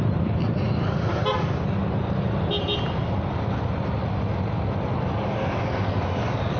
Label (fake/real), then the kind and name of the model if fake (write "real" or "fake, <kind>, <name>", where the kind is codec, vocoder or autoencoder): real